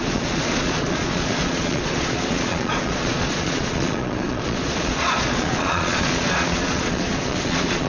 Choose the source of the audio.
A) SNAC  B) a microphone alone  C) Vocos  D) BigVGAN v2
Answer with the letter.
C